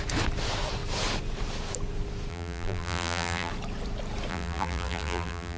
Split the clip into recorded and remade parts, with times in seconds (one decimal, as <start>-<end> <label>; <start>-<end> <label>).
0.0-2.3 recorded; 2.3-3.5 remade; 3.5-4.3 recorded; 4.3-5.6 remade